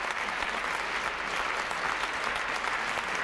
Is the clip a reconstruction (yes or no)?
no